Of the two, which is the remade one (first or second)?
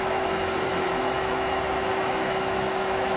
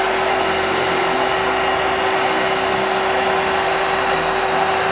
first